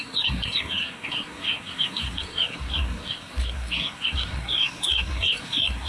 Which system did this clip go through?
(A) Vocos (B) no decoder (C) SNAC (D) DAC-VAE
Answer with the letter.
C